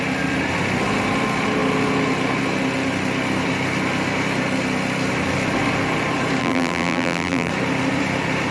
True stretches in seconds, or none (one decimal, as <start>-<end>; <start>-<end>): 0.0-6.4; 7.5-8.5